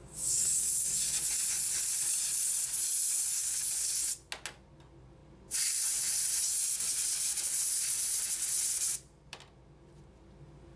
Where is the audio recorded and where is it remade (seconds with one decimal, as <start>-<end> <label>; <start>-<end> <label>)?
0.0-1.0 remade; 1.0-3.3 recorded; 3.3-4.1 remade; 4.1-10.8 recorded